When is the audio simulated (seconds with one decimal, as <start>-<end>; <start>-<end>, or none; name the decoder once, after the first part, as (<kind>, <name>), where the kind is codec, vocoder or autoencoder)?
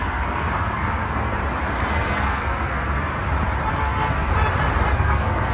0.0-1.4 (codec, SNAC); 1.9-3.1; 3.7-4.3; 4.9-5.5